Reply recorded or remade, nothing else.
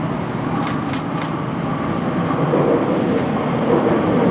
recorded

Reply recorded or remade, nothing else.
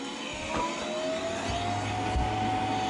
recorded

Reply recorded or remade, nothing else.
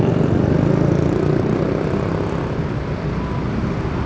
recorded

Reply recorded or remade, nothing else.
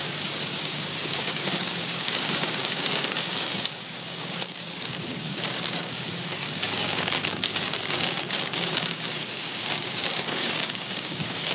remade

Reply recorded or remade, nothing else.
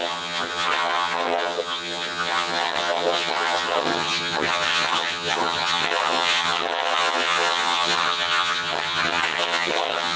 remade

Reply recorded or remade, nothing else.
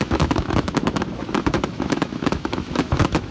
remade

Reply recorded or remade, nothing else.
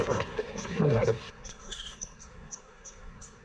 remade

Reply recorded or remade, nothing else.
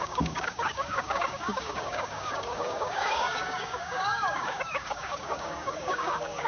remade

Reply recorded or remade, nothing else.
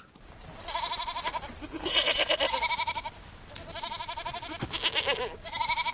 recorded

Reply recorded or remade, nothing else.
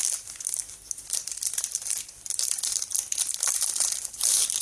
recorded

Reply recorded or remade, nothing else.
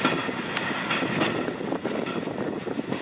recorded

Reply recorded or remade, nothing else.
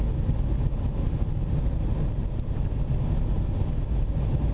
recorded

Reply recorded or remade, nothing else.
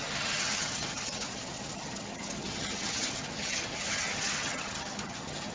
remade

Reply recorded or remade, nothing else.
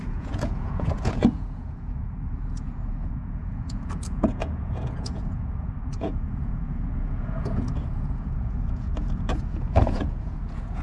remade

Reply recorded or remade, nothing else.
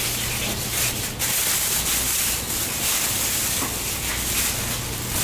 recorded